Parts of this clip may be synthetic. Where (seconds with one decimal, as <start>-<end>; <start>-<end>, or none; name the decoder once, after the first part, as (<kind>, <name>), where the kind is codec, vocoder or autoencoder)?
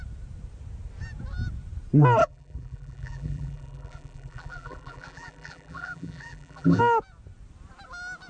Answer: 2.2-6.8 (vocoder, BigVGAN v2)